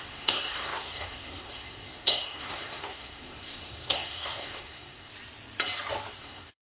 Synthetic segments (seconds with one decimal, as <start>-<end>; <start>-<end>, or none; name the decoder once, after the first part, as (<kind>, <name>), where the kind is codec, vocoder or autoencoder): 0.0-5.1 (codec, SNAC); 6.2-6.8